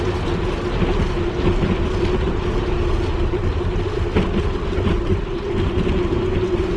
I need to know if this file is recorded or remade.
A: recorded